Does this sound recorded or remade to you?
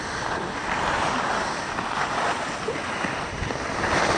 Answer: recorded